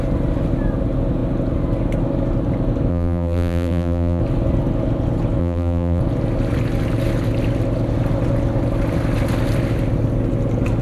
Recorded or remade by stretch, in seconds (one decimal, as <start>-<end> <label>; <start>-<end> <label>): 0.0-2.9 recorded; 2.9-4.2 remade; 4.2-5.4 recorded; 5.4-6.0 remade; 6.0-10.8 recorded